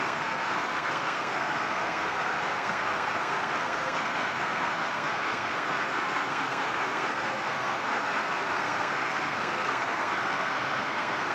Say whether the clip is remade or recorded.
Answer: remade